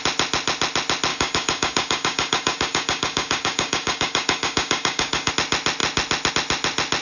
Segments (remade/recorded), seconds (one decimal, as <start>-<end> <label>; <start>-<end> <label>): 0.0-1.1 recorded; 1.1-5.3 remade; 5.3-7.0 recorded